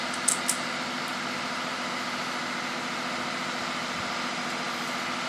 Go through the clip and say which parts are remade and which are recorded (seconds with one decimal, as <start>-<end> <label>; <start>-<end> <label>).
0.0-1.1 recorded; 1.1-1.9 remade; 1.9-5.3 recorded